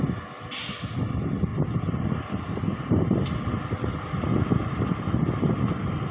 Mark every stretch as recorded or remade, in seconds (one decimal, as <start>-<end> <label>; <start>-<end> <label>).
0.0-6.1 recorded